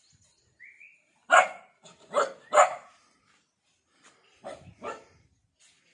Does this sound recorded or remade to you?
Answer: recorded